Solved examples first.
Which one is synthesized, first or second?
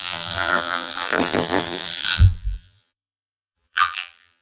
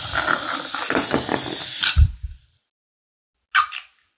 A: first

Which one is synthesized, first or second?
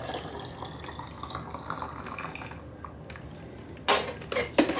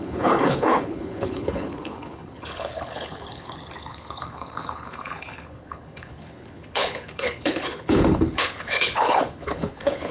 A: second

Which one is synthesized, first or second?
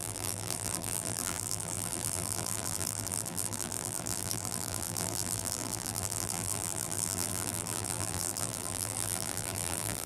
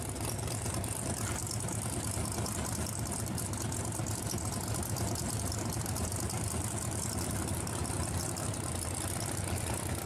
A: first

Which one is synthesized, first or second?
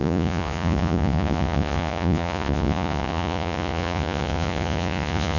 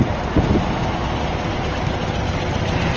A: first